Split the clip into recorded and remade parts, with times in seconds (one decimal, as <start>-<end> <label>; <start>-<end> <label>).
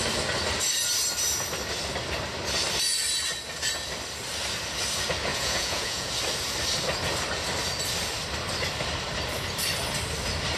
0.0-5.3 recorded; 5.3-6.1 remade; 6.1-10.6 recorded